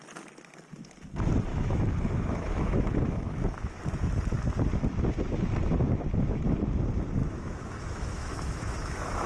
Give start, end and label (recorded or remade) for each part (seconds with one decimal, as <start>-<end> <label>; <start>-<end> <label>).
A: 0.0-1.5 recorded; 1.5-3.8 remade; 3.8-7.2 recorded; 7.2-9.3 remade